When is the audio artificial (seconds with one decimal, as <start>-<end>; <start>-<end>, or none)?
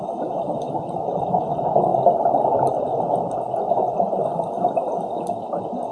none